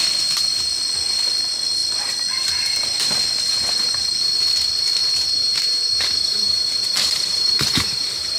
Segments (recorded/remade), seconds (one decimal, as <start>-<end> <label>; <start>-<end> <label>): 0.0-5.0 recorded; 5.0-8.4 remade